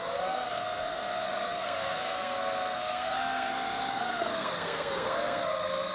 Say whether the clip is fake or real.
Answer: fake